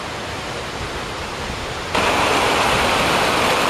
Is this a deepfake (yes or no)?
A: no